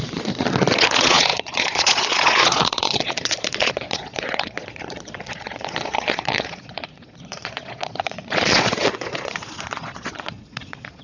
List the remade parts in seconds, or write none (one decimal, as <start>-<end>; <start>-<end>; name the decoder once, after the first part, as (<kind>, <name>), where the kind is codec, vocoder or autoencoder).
0.0-11.0 (vocoder, Vocos)